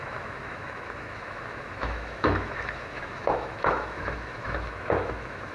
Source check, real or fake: fake